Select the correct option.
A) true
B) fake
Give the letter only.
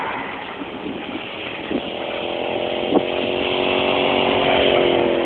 A